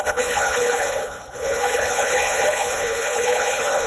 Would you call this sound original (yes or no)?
no